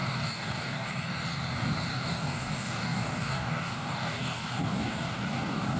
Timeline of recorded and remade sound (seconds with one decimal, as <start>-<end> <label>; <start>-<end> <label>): 0.0-0.9 remade; 0.9-1.9 recorded; 1.9-5.8 remade